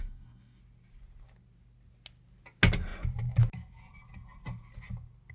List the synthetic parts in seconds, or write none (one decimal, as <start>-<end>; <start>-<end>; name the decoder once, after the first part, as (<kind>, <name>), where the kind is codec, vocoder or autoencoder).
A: 0.0-0.6 (codec, DAC)